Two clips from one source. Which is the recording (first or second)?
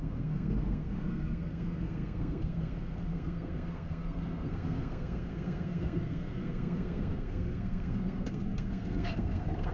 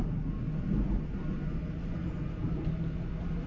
second